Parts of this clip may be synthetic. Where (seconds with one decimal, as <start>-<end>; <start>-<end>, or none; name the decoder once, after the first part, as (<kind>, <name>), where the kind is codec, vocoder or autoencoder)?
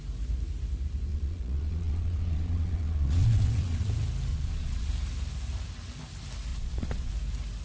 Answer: 1.1-3.9 (vocoder, Vocos); 4.3-4.9; 6.5-7.1